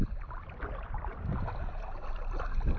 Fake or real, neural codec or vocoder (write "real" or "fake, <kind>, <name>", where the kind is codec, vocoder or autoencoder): real